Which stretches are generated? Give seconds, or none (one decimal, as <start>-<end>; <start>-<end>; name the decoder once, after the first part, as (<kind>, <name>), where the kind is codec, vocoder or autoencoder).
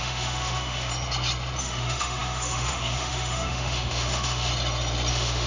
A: 0.0-0.9 (autoencoder, DAC-VAE); 1.6-4.5; 5.1-5.5